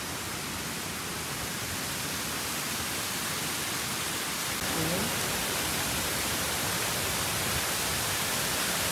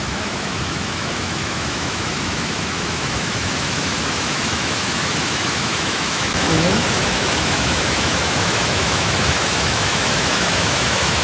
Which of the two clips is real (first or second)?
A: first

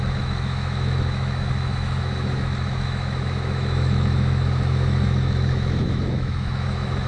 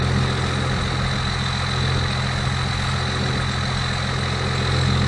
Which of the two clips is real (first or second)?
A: second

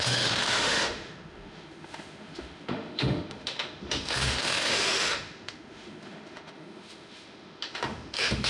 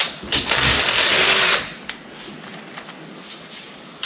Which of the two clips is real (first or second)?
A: second